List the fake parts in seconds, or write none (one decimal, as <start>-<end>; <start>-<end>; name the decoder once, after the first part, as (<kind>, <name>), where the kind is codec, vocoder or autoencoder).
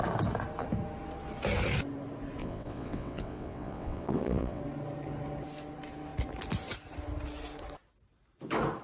2.4-4.6 (vocoder, WaveNeXt)